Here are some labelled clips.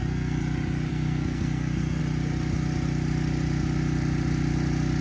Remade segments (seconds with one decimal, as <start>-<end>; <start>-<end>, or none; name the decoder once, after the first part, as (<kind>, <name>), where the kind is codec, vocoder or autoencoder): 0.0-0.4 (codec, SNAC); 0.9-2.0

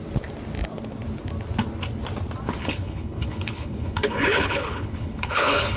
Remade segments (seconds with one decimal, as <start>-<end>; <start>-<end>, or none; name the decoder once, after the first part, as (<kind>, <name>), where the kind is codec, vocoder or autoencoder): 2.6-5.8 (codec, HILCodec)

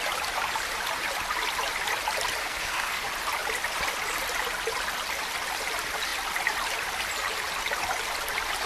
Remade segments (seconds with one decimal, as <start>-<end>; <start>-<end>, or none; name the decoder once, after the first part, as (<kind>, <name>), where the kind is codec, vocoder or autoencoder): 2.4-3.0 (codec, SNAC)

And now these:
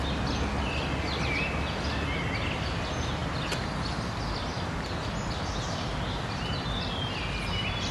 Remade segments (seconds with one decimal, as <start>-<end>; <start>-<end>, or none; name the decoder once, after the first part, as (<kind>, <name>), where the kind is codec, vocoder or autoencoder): none